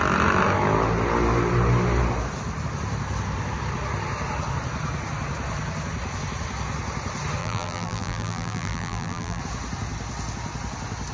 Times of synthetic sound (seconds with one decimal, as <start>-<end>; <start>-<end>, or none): 7.4-9.4